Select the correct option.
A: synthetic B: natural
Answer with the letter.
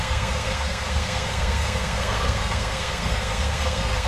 A